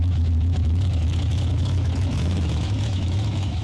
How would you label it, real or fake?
fake